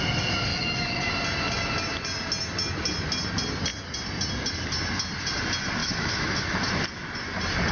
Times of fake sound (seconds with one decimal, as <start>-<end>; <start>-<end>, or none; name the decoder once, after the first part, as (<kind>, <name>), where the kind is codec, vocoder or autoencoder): 0.5-1.1 (autoencoder, DAC-VAE); 5.8-6.7